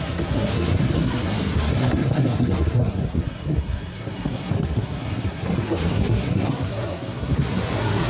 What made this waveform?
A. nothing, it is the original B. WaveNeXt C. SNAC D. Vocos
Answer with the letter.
C